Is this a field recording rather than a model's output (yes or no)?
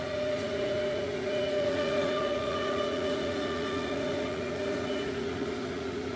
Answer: no